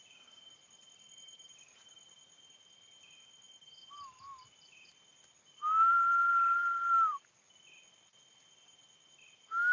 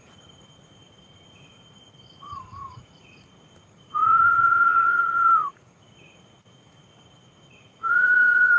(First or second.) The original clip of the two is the first